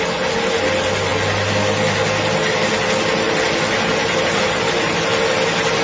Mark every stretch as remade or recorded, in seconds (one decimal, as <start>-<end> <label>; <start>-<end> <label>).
0.0-5.8 recorded